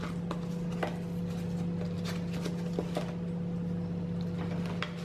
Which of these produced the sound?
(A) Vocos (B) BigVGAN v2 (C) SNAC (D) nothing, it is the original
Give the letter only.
D